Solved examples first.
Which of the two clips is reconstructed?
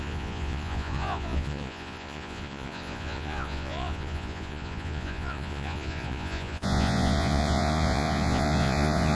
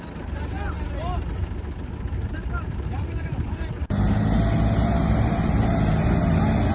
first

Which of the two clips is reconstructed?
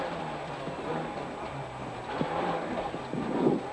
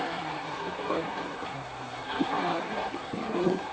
second